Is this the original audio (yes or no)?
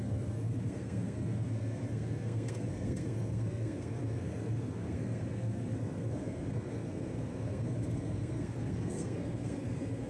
no